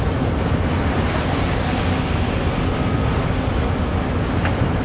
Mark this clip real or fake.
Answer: real